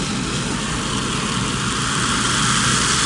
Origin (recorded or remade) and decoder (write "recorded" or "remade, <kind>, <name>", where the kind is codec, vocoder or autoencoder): recorded